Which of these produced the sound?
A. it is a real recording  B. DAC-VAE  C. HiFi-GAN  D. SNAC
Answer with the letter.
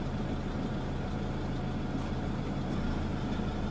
A